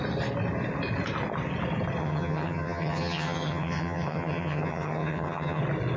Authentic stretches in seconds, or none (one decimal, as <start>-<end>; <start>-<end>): 0.0-2.0; 5.6-6.0